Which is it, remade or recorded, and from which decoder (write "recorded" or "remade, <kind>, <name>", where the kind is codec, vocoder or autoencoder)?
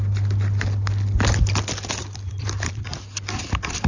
recorded